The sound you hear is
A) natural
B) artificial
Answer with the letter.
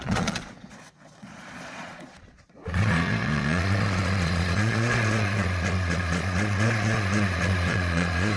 B